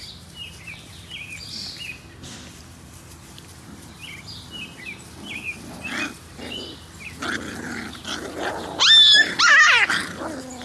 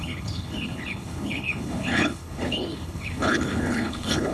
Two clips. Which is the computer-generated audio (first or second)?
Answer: second